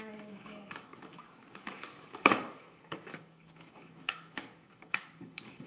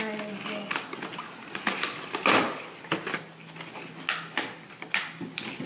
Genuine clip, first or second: second